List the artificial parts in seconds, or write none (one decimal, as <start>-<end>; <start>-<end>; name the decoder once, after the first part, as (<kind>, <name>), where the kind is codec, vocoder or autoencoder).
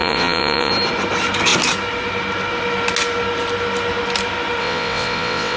0.0-0.7 (vocoder, WaveNeXt); 4.6-5.6